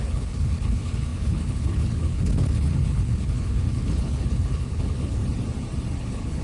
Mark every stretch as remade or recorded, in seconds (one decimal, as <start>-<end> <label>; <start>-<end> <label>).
0.0-5.2 remade; 5.2-6.0 recorded; 6.0-6.4 remade